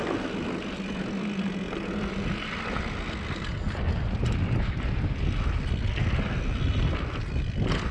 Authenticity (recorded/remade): recorded